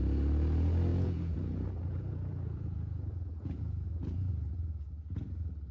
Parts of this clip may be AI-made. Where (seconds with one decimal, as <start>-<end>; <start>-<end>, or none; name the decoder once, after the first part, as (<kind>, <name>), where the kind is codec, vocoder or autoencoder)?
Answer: 0.9-4.3 (vocoder, Vocos)